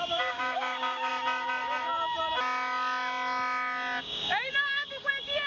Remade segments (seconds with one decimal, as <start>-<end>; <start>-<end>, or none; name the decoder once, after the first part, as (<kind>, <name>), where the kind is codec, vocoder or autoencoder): 0.0-1.1 (codec, DAC); 4.0-5.5